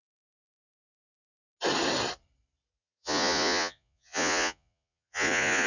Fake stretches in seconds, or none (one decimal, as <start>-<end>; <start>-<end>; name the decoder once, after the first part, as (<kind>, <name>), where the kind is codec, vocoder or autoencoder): 2.7-5.7 (vocoder, Vocos)